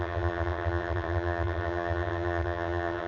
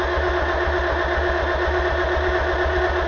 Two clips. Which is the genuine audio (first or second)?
second